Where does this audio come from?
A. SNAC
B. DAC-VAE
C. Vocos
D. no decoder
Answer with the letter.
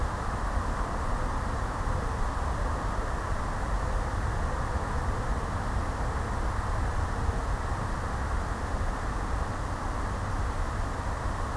D